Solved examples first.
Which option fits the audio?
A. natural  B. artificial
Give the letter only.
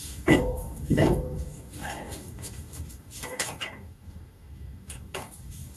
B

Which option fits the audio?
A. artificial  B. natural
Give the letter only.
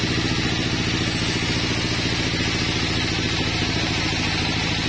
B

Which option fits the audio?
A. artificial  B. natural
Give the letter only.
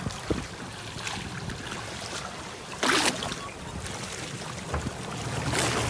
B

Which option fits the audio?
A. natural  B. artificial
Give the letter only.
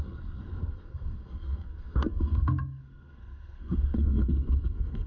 B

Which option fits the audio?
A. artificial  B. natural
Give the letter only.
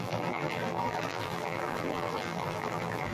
A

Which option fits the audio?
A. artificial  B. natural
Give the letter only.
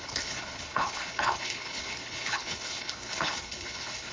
A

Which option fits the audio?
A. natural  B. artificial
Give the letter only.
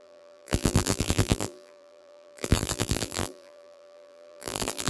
B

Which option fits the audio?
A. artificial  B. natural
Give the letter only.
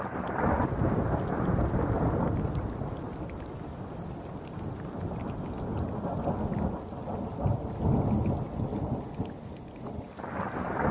B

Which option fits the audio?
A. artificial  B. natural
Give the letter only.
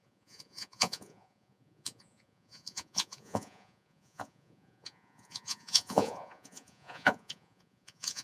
A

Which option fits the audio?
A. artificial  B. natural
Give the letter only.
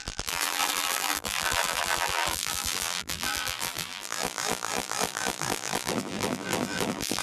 A